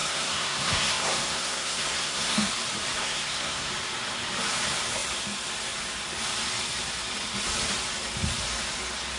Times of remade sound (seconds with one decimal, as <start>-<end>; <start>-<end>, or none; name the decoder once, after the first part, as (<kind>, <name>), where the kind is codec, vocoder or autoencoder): 0.0-2.5 (codec, SNAC); 3.0-3.7